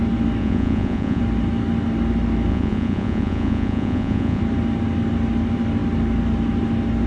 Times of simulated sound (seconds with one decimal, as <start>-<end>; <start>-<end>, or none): 0.4-1.2; 2.5-4.4